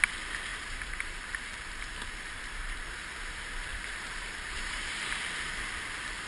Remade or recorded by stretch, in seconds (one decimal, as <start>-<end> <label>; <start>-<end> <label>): 0.0-0.5 recorded; 0.5-1.8 remade; 1.8-3.7 recorded; 3.7-5.1 remade; 5.1-6.3 recorded